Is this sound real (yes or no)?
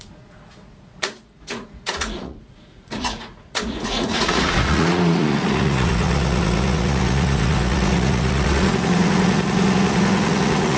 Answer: no